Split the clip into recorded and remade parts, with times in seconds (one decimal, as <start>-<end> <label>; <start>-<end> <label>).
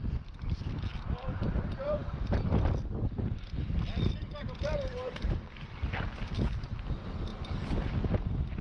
0.0-7.3 remade; 7.3-8.6 recorded